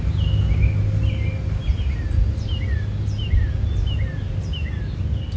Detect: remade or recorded recorded